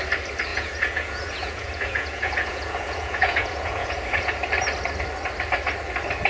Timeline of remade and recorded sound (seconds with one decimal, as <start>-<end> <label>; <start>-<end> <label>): 0.0-0.5 recorded; 0.5-4.3 remade; 4.3-6.3 recorded